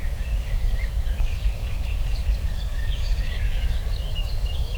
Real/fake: fake